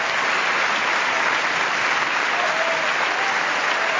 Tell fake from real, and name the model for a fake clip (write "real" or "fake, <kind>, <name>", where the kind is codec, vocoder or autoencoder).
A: real